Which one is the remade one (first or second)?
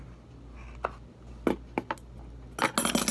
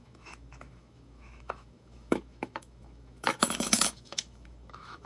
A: second